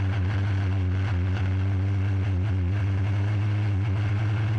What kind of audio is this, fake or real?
real